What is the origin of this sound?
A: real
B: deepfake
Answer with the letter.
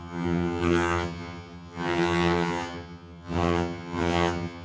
B